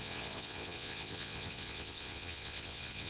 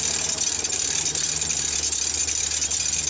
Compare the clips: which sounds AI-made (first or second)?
first